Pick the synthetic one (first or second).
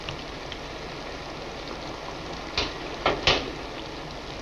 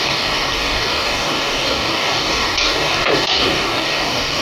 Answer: second